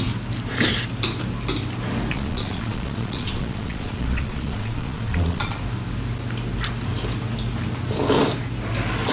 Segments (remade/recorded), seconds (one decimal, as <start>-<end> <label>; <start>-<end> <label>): 0.0-2.1 recorded; 2.1-5.6 remade; 5.6-9.1 recorded

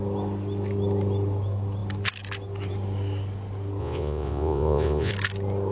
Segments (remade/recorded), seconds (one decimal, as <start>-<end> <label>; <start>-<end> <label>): 0.0-3.8 recorded; 3.8-5.1 remade; 5.1-5.7 recorded

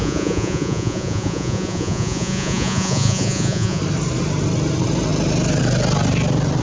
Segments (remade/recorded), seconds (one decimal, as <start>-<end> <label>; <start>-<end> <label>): 0.0-3.8 remade; 3.8-6.6 recorded

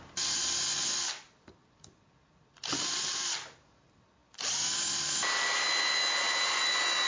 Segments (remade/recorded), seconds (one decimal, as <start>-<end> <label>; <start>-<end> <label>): 0.0-7.1 recorded

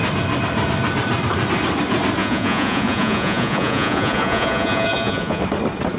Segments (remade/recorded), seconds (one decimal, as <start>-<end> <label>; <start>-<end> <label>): 0.0-2.2 recorded; 2.2-5.4 remade; 5.4-6.0 recorded

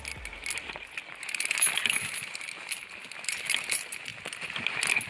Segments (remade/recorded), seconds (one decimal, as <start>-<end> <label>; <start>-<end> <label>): 0.0-5.1 recorded

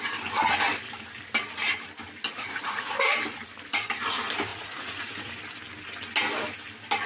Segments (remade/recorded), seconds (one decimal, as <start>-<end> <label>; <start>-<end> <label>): 0.0-2.3 recorded; 2.3-2.9 remade; 2.9-4.5 recorded; 4.5-5.4 remade; 5.4-7.1 recorded

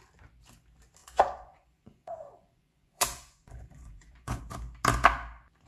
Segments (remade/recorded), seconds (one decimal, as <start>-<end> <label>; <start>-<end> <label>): 0.0-1.0 recorded; 1.0-4.4 remade; 4.4-5.7 recorded